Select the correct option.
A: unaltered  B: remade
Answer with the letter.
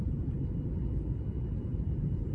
B